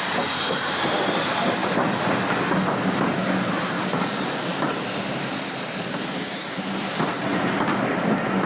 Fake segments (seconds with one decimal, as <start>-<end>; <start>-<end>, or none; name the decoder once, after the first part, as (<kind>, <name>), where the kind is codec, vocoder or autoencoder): none